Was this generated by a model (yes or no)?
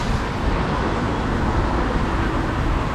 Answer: no